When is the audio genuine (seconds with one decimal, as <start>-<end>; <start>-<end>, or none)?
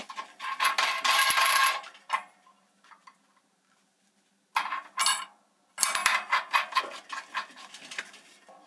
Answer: 0.0-8.7